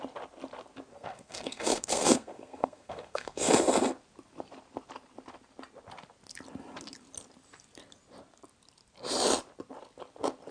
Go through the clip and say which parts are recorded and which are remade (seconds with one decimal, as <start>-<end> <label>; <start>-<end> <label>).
0.0-0.9 recorded; 0.9-3.5 remade; 3.5-10.5 recorded